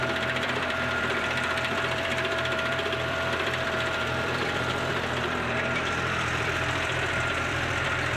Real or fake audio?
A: fake